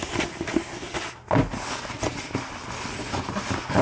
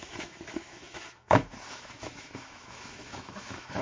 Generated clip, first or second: second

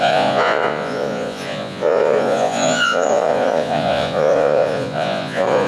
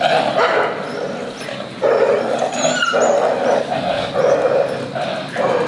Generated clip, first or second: first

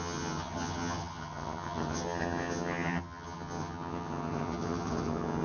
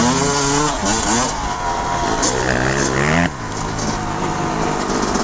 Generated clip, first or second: first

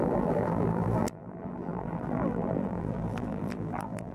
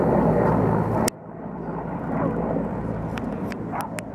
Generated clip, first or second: first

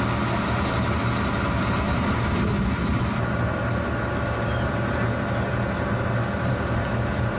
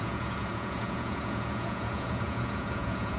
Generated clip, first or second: second